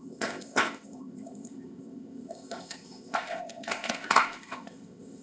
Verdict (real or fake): fake